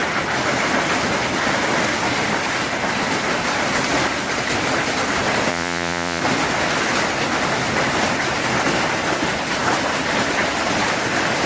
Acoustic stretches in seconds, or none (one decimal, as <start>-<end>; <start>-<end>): 0.0-5.5; 6.2-11.5